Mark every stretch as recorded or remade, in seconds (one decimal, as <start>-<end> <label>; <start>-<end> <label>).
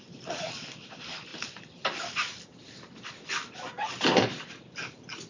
0.0-1.3 remade; 1.3-3.7 recorded; 3.7-5.3 remade